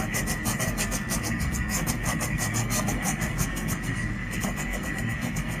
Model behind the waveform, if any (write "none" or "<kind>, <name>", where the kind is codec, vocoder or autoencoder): codec, SNAC